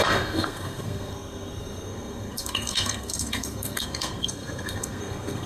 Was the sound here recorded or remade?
remade